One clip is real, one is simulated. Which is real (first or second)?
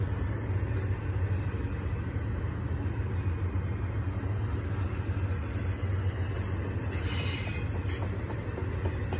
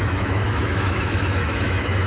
first